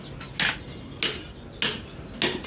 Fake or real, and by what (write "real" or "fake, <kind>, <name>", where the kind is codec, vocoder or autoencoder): real